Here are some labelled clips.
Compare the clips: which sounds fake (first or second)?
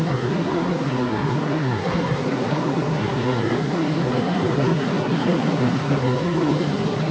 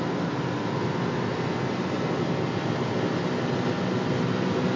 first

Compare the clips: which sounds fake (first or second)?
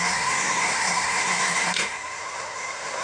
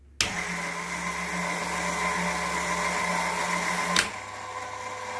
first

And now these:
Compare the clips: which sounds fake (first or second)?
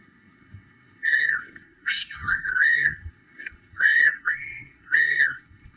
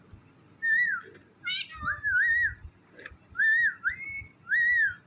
first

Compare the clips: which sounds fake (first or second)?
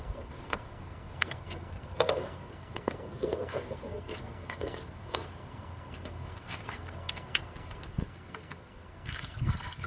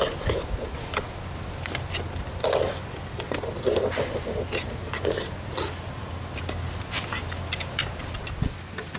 first